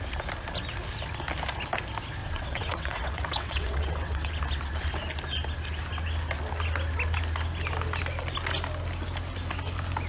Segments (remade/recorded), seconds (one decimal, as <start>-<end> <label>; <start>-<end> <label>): 0.0-2.2 recorded; 2.2-4.4 remade; 4.4-10.1 recorded